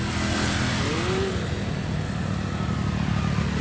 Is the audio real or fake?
real